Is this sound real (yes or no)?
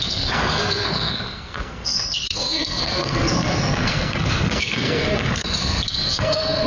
no